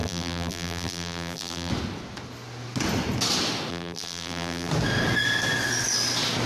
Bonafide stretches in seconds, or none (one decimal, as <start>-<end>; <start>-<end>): 1.7-3.7; 4.7-6.5